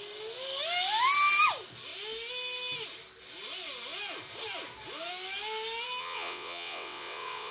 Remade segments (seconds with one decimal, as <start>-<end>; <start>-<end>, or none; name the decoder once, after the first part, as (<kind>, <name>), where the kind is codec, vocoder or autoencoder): 6.0-7.5 (vocoder, WaveNeXt)